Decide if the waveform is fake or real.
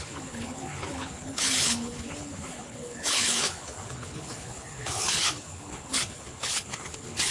fake